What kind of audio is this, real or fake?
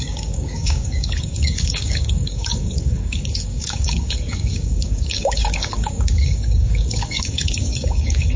fake